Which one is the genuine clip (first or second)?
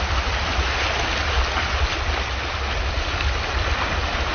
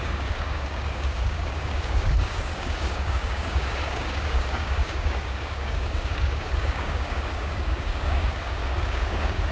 first